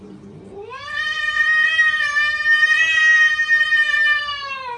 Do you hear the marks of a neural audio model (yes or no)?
no